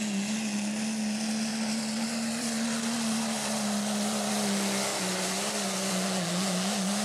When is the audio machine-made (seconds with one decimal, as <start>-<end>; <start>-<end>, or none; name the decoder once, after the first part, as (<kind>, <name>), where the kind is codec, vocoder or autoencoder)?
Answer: 1.5-4.3 (vocoder, BigVGAN v2); 4.9-5.9